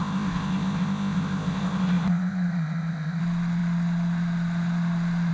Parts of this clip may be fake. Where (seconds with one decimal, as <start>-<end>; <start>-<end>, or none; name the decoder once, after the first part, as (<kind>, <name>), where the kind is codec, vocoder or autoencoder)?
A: 0.0-3.2 (codec, ZipCodec)